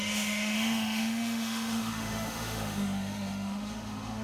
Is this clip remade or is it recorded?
remade